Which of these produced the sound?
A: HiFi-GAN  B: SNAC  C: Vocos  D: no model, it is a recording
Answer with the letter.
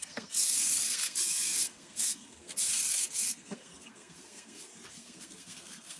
B